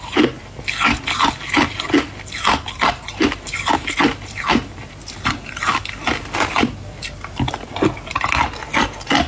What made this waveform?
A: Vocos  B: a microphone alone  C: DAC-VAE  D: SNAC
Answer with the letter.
B